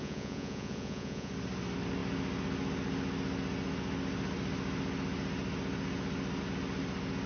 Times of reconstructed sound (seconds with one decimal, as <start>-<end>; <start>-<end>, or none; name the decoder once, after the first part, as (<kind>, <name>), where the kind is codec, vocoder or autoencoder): 0.0-1.3 (vocoder, Vocos)